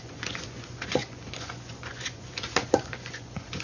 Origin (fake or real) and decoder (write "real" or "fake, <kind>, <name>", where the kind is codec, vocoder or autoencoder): fake, vocoder, Vocos